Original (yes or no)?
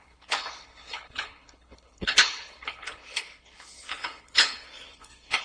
no